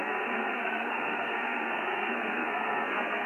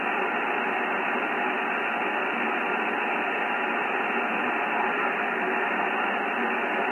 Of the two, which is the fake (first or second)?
first